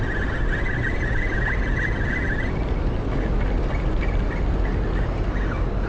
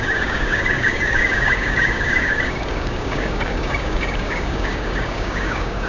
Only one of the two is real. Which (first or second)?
first